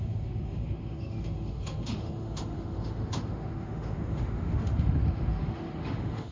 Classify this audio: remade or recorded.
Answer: remade